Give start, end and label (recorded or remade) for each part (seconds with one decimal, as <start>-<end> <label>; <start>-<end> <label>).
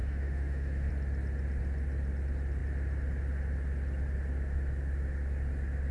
0.0-0.9 remade; 0.9-5.9 recorded